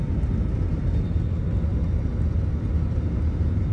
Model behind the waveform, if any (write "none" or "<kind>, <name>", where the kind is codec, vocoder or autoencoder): none